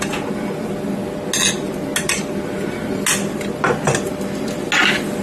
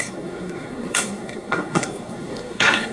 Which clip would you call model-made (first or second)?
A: second